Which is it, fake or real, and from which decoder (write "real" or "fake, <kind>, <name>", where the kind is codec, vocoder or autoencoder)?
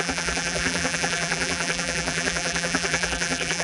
fake, vocoder, BigVGAN v2